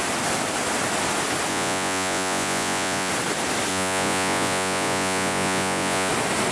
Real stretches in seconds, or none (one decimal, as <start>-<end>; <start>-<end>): 0.0-1.5; 3.1-3.7; 6.1-6.5